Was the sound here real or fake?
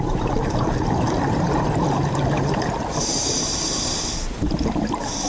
fake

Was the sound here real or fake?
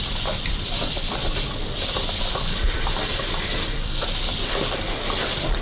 real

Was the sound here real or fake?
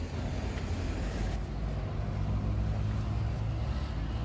real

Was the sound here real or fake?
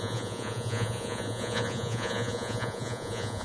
fake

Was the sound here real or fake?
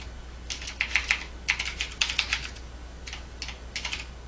real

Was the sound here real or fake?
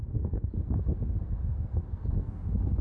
fake